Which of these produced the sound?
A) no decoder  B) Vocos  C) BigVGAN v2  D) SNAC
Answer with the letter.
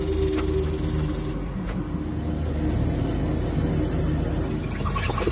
A